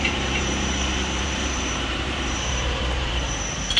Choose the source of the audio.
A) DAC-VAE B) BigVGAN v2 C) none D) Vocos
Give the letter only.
B